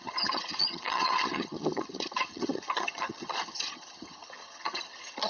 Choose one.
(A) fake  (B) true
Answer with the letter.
A